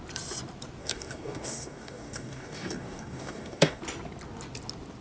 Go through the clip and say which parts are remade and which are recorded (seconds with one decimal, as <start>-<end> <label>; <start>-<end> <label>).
0.0-0.8 recorded; 0.8-3.8 remade; 3.8-5.0 recorded